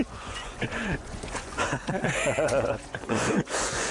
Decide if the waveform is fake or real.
fake